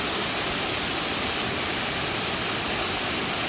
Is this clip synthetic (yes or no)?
no